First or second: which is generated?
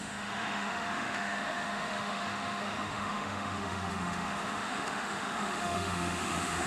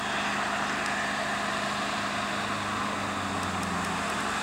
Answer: first